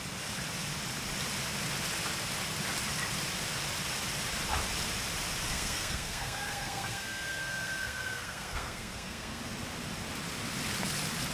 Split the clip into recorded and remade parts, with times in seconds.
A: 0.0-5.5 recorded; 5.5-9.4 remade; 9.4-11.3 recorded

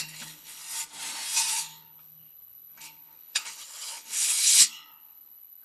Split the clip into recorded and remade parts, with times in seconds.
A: 0.0-0.6 remade; 0.6-1.5 recorded; 1.5-5.6 remade

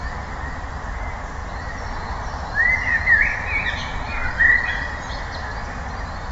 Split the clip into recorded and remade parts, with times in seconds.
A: 0.0-1.4 recorded; 1.4-5.2 remade; 5.2-6.3 recorded

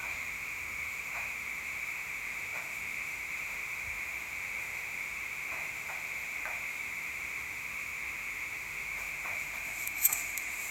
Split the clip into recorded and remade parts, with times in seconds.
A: 0.0-10.7 remade

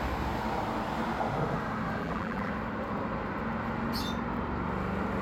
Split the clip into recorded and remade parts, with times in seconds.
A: 0.0-2.0 recorded; 2.0-2.5 remade; 2.5-5.2 recorded